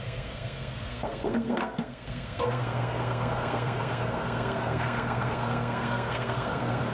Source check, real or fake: fake